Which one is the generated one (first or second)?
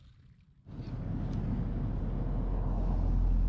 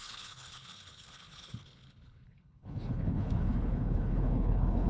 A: second